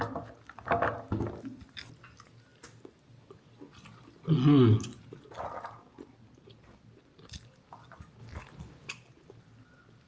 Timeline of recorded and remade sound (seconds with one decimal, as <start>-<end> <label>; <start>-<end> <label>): 0.0-10.1 recorded